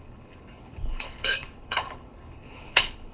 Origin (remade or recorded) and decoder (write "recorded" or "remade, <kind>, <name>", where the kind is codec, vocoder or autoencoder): remade, codec, HILCodec